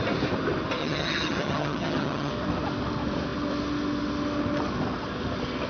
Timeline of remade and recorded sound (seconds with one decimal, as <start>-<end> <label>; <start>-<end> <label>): 0.0-0.8 recorded; 0.8-2.3 remade; 2.3-5.7 recorded